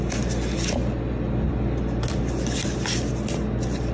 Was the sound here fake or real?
real